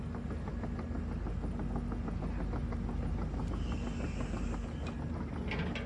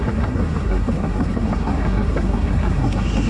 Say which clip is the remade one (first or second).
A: second